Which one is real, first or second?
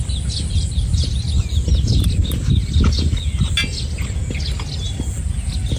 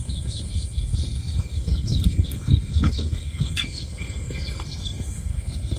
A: first